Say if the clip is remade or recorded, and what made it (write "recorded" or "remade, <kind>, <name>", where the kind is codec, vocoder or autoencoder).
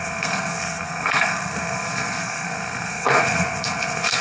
remade, codec, SNAC